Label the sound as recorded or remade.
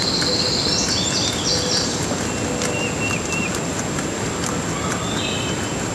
recorded